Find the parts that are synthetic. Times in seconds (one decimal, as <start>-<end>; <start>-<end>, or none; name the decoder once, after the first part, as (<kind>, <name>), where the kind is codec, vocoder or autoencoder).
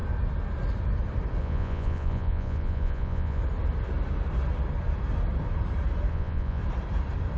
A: 1.4-3.4 (vocoder, Vocos); 6.1-6.6